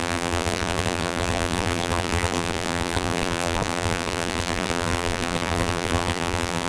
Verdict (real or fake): fake